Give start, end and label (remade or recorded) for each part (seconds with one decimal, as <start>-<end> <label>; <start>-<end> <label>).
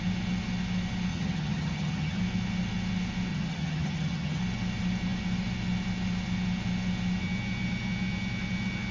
0.0-1.1 recorded; 1.1-2.2 remade; 2.2-3.3 recorded; 3.3-4.4 remade; 4.4-8.9 recorded